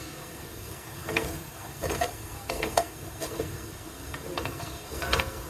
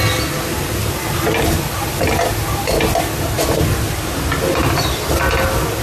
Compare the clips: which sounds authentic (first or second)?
second